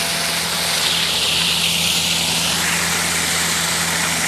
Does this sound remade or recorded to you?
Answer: recorded